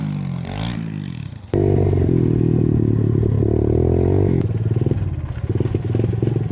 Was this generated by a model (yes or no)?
no